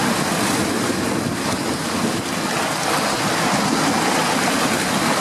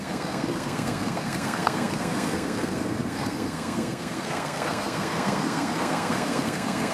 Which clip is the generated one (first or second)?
second